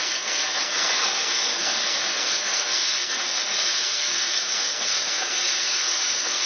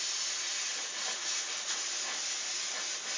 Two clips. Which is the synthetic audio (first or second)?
first